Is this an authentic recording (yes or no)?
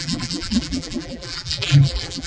no